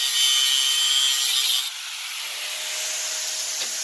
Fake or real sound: real